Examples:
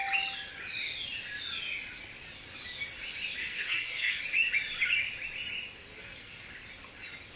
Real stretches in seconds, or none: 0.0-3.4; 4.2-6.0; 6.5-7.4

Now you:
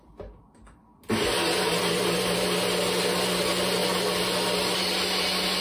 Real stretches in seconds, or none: 0.0-5.6

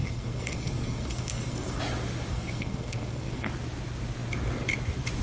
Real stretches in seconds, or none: 1.8-2.3; 3.5-5.2

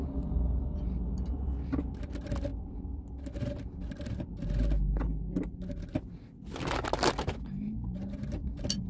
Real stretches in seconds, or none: 0.0-8.9

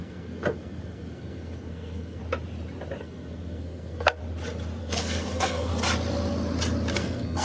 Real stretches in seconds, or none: 2.2-3.0; 4.2-4.8; 5.7-6.9

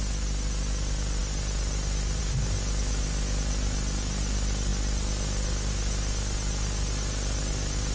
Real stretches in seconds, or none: 0.0-7.9

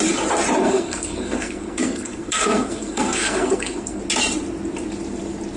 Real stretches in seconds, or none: 0.0-0.6; 4.0-5.6

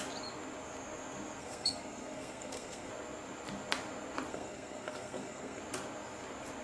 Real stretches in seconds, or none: 0.0-1.4; 2.9-4.3; 5.6-6.6